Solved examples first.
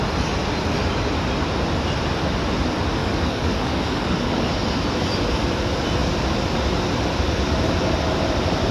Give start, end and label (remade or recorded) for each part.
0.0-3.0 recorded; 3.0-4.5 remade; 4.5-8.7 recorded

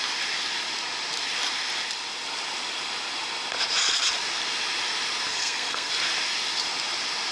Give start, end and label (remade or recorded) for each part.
0.0-5.3 recorded; 5.3-5.9 remade; 5.9-7.3 recorded

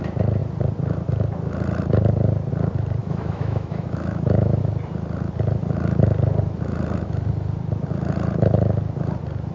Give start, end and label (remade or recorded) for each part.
0.0-3.0 recorded; 3.0-4.6 remade; 4.6-9.5 recorded

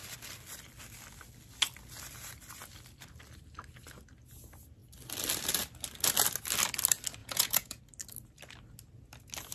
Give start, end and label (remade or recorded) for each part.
0.0-7.2 recorded; 7.2-7.8 remade; 7.8-9.5 recorded